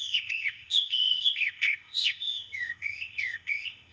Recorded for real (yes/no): no